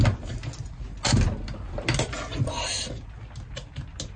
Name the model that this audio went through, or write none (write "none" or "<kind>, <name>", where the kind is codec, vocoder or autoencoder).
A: none